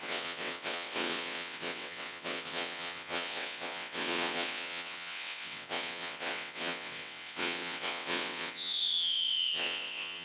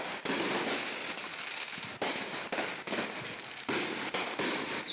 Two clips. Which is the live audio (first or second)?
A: second